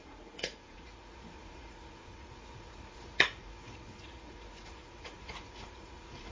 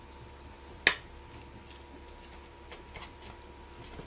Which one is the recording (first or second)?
second